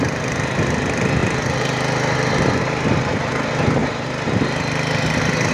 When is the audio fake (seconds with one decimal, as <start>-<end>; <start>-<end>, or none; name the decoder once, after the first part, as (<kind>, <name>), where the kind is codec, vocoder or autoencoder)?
none